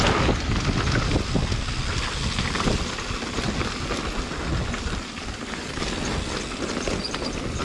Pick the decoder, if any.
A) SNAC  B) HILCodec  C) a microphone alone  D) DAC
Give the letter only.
C